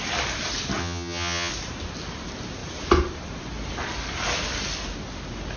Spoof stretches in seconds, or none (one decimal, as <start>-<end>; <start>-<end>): 0.8-1.5